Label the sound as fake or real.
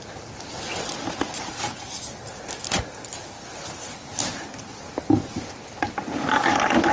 real